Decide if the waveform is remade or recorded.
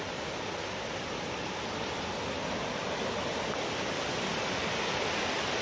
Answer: recorded